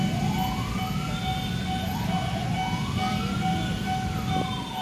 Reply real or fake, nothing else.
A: real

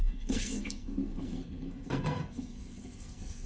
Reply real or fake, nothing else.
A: fake